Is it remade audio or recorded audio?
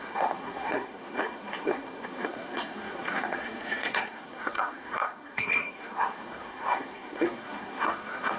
remade